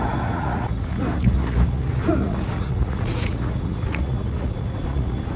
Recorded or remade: remade